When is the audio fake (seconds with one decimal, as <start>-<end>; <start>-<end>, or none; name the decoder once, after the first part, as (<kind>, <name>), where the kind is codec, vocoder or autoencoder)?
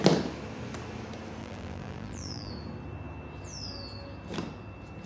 1.4-2.5 (vocoder, BigVGAN v2)